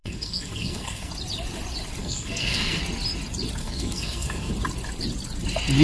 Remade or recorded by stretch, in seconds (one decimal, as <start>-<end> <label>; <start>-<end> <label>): 0.0-1.1 remade; 1.1-2.0 recorded; 2.0-2.8 remade; 2.8-3.6 recorded; 3.6-4.5 remade; 4.5-5.8 recorded

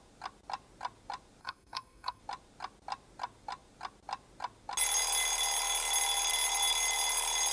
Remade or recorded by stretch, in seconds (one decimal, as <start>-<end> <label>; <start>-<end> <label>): 0.0-1.4 recorded; 1.4-2.2 remade; 2.2-7.5 recorded

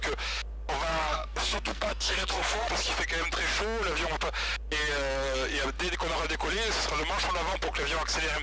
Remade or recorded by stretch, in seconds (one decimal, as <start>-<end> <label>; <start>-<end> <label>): 0.0-0.9 recorded; 0.9-2.7 remade; 2.7-8.4 recorded

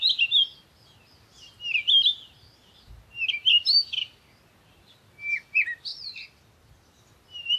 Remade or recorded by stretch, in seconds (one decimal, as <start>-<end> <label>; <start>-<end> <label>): 0.0-7.6 recorded

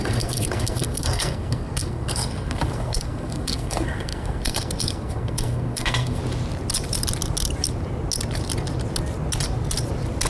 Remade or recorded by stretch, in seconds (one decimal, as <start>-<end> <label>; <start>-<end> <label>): 0.0-6.2 remade; 6.2-10.3 recorded